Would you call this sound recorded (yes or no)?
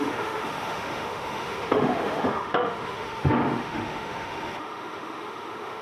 no